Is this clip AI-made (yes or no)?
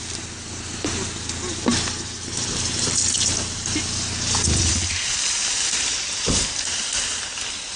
no